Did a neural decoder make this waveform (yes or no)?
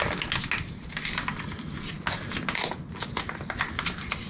no